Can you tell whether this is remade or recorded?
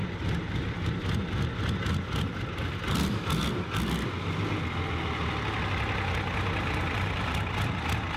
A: recorded